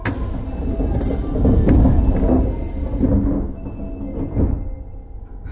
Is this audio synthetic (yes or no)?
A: no